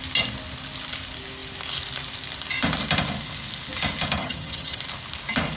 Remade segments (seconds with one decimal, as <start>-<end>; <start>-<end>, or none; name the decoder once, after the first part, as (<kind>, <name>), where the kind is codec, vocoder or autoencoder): 4.2-4.8 (vocoder, HiFi-GAN)